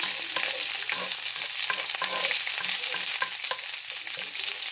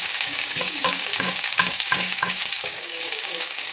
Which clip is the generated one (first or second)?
second